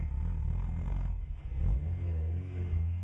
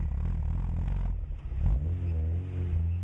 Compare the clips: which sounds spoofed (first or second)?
first